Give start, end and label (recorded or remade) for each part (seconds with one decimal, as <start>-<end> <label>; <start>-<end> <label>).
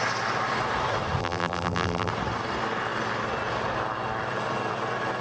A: 0.0-1.2 recorded; 1.2-2.1 remade; 2.1-5.2 recorded